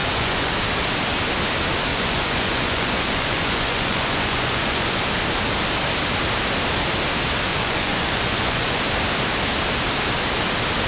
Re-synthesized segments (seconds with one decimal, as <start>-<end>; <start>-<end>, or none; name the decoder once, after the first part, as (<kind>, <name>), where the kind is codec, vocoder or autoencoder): 0.0-0.5 (vocoder, Vocos); 1.9-5.0; 7.5-8.8